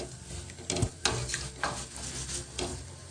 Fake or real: real